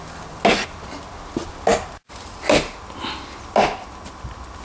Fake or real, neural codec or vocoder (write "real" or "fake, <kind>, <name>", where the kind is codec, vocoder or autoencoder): real